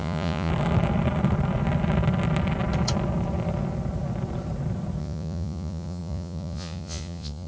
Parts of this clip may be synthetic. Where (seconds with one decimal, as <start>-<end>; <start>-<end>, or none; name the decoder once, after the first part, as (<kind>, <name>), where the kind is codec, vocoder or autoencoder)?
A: 0.0-0.5 (vocoder, Vocos); 5.0-7.5